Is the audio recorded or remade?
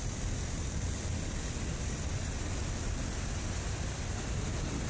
recorded